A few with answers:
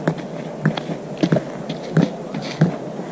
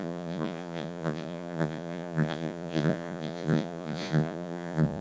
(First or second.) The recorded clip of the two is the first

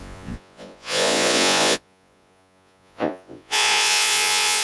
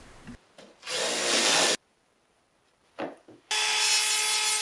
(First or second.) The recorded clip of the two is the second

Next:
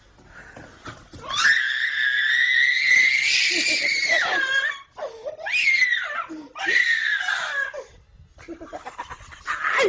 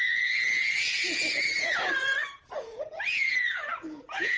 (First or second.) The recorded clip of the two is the first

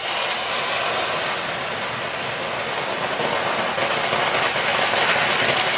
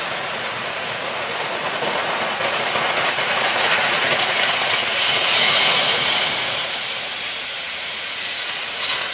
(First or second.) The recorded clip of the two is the first